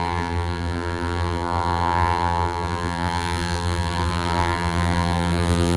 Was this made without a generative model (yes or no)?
no